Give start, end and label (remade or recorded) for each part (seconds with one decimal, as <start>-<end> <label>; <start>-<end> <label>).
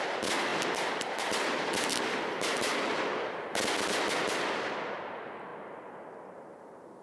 0.0-7.0 recorded